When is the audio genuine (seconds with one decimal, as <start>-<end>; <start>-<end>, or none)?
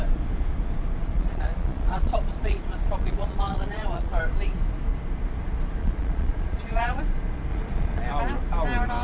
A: 0.0-1.0; 4.2-5.8; 7.0-7.5; 8.0-9.0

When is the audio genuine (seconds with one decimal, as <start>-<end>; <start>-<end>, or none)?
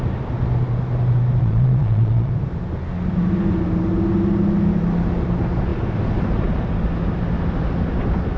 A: 0.0-1.4; 2.3-8.4